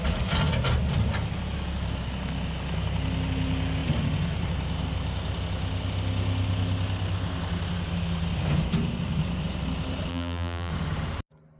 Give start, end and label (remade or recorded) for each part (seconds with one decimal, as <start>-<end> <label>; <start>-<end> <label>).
0.0-10.1 recorded; 10.1-10.7 remade; 10.7-11.6 recorded